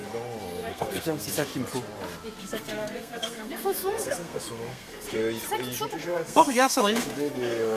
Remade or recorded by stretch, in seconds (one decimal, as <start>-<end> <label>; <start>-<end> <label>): 0.0-0.7 recorded; 0.7-1.5 remade; 1.5-2.4 recorded; 2.4-5.2 remade; 5.2-5.9 recorded; 5.9-7.8 remade